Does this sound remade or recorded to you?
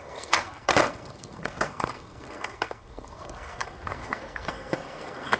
remade